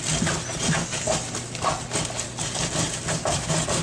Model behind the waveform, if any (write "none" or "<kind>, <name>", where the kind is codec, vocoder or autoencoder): none